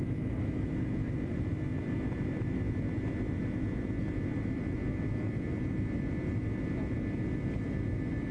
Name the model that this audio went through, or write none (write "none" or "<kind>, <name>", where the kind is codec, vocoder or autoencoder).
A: none